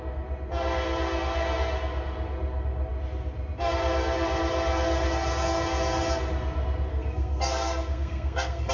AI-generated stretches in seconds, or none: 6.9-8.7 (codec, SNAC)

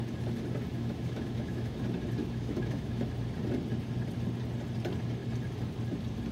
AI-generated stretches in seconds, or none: 0.7-1.8 (autoencoder, DAC-VAE); 2.2-3.1

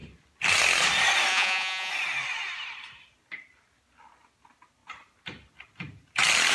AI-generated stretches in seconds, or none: 1.3-1.9 (vocoder, Vocos)

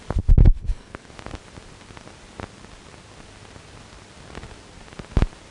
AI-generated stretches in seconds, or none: 0.4-1.1 (codec, SNAC)